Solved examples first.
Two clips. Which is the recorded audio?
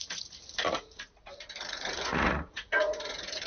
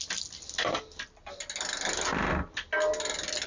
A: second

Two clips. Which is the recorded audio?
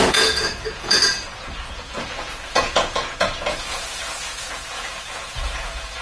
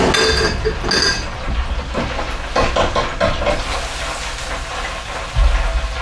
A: second